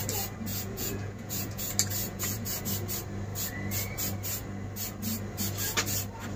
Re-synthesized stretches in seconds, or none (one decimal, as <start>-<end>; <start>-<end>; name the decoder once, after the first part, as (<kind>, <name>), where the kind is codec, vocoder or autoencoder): 0.5-1.6 (vocoder, Vocos); 2.0-2.6